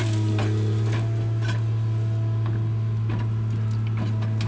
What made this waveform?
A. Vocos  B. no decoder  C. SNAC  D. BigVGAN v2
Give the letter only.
B